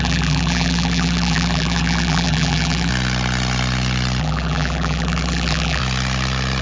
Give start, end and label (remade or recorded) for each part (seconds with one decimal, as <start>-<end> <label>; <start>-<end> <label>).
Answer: 0.0-2.9 remade; 2.9-4.2 recorded; 4.2-5.8 remade; 5.8-6.6 recorded